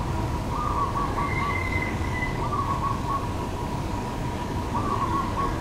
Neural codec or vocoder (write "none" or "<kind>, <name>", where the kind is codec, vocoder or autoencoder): codec, DAC